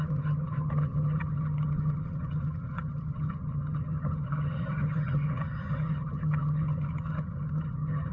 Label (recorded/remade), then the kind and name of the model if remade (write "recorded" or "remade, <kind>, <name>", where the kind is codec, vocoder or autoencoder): remade, vocoder, HiFi-GAN